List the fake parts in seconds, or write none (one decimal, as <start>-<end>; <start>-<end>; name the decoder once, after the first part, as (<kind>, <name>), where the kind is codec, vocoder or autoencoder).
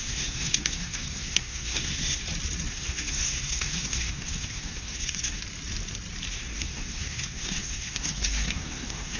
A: 0.0-2.2 (codec, SNAC); 2.7-5.4; 6.3-9.2